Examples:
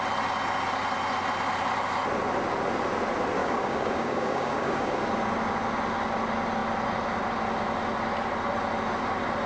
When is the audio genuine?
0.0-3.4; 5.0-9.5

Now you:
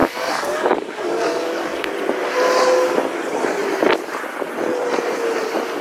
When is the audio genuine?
1.9-5.8

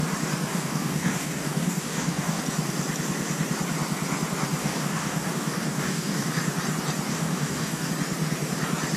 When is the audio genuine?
0.0-0.5; 2.4-4.6; 6.3-7.1; 7.9-9.0

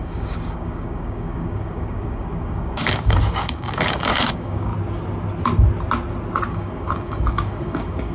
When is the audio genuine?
4.7-6.5

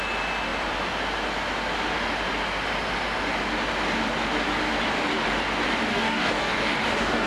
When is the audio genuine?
0.0-5.9

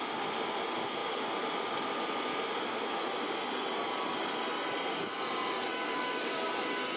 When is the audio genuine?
0.0-5.7; 6.5-7.0

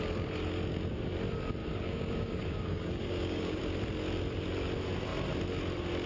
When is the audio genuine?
0.0-1.6; 3.6-6.1

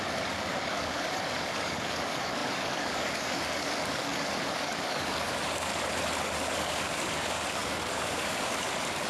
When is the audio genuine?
5.7-6.2